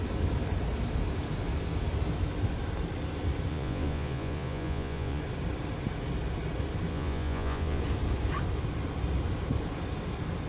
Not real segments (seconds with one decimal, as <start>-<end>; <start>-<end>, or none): 3.5-5.2; 6.9-7.8